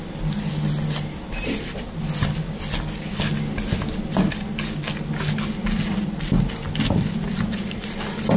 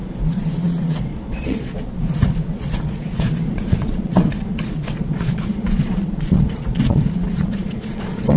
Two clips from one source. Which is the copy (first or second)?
second